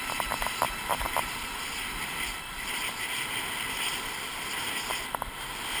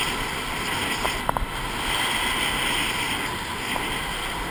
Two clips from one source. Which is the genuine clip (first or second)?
second